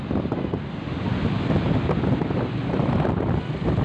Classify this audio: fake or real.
real